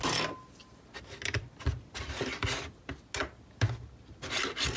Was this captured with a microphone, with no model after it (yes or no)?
yes